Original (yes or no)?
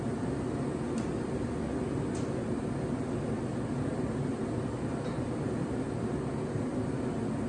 yes